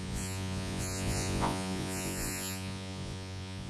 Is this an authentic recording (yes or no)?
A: no